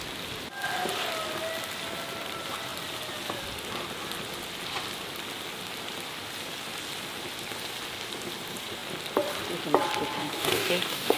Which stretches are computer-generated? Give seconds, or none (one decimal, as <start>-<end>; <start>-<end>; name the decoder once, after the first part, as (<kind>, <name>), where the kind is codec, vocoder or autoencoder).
10.2-11.2 (codec, DAC)